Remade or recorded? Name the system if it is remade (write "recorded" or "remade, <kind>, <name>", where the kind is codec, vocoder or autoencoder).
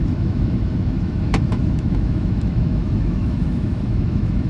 remade, autoencoder, DAC-VAE